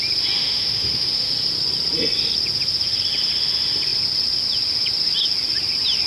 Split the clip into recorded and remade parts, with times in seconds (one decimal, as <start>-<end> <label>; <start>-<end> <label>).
0.0-0.4 recorded; 0.4-1.3 remade; 1.3-6.1 recorded